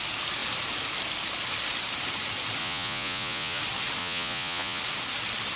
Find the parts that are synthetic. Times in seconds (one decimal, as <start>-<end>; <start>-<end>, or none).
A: 2.6-3.6; 4.0-4.8